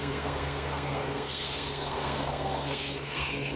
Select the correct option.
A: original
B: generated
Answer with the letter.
B